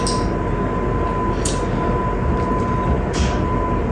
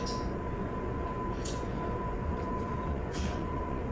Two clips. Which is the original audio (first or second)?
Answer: first